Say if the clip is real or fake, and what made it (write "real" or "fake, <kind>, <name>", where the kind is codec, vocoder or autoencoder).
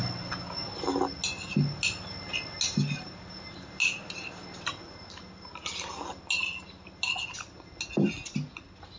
real